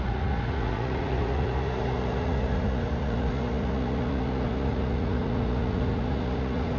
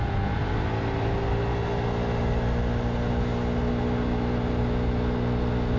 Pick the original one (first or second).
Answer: second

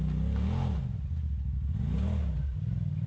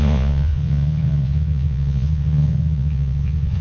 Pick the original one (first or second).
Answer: first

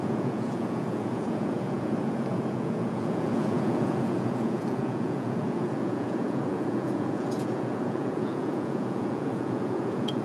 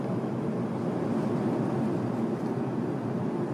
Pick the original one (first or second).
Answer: second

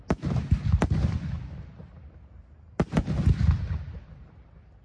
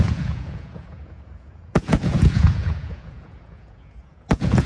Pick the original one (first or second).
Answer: first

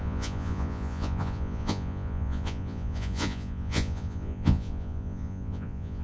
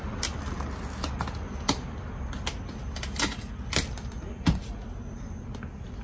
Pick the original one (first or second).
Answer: second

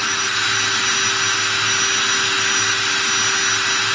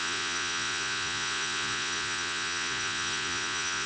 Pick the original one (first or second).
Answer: first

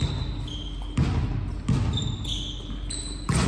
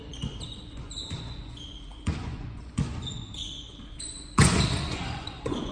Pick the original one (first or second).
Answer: first